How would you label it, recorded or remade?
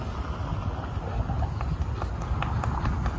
recorded